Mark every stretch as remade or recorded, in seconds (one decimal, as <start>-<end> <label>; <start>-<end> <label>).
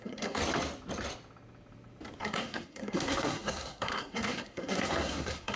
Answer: 0.0-0.4 remade; 0.4-2.2 recorded; 2.2-5.6 remade